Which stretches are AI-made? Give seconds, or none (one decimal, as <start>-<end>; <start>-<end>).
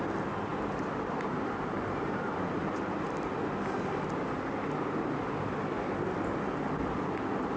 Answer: 0.5-3.3